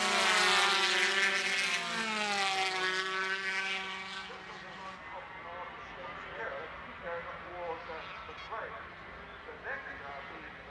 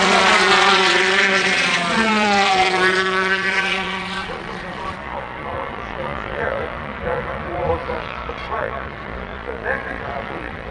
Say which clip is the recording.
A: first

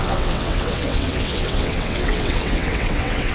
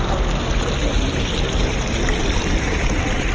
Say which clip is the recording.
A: second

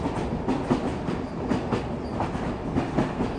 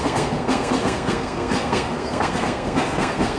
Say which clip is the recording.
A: first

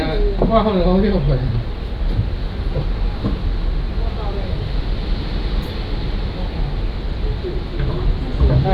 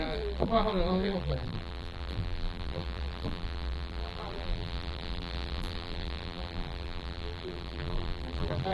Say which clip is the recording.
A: first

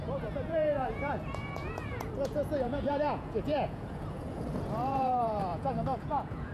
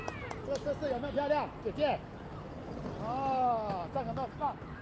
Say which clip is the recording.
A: second